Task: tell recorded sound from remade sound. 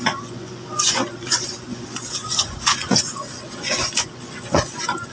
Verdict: remade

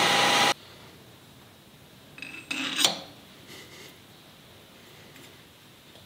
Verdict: recorded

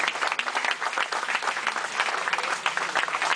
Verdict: recorded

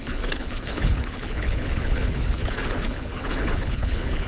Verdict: remade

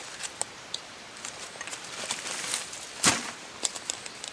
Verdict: remade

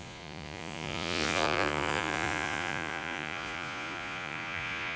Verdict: remade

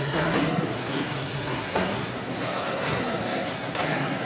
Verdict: remade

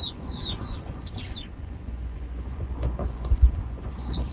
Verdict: remade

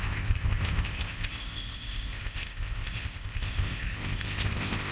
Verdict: remade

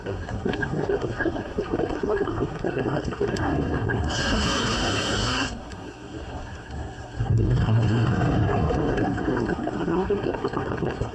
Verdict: remade